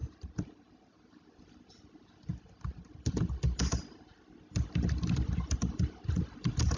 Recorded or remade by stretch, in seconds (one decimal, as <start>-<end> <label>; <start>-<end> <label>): 0.0-1.5 remade; 1.5-6.8 recorded